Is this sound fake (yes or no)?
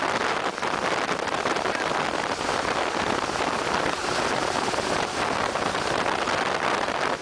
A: no